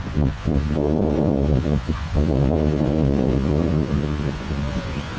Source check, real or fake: fake